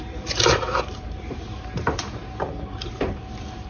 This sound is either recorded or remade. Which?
remade